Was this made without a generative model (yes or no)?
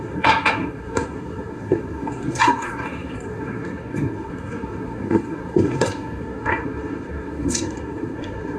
no